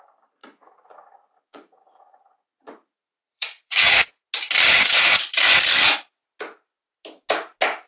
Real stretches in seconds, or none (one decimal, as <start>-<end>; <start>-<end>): 0.0-0.4; 4.2-4.7; 5.2-7.9